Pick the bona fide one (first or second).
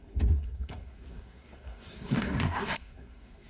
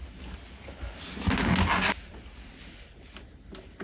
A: second